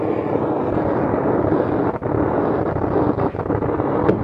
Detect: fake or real real